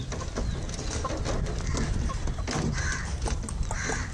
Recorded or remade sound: recorded